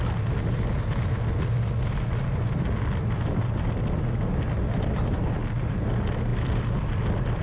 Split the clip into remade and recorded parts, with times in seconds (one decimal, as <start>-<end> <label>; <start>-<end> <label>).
0.0-7.4 recorded